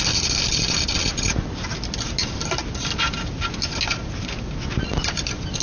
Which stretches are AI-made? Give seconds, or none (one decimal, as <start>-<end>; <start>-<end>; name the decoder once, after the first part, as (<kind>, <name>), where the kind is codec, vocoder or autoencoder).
none